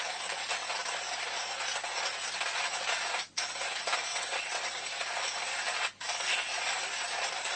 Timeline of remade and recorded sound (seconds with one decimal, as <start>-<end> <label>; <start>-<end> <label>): 0.0-4.1 recorded; 4.1-4.6 remade; 4.6-7.6 recorded